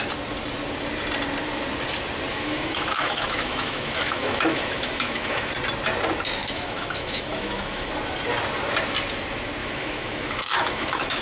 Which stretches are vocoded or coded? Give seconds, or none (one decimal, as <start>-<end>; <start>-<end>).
2.3-5.5; 6.4-7.9; 9.6-11.2